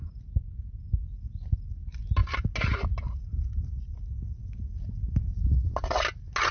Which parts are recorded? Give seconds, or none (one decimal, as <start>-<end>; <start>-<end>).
0.0-6.5